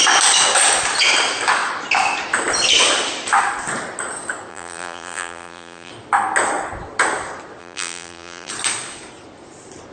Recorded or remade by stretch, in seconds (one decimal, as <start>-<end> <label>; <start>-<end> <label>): 0.0-4.5 recorded; 4.5-5.9 remade; 5.9-7.6 recorded; 7.6-8.5 remade; 8.5-9.9 recorded